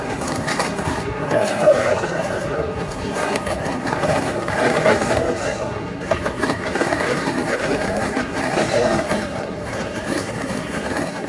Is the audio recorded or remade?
remade